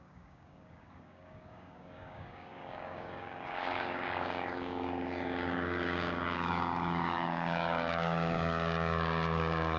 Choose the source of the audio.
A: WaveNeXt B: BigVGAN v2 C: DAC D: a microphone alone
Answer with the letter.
C